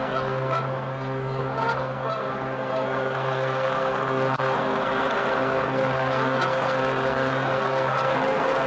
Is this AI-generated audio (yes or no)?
yes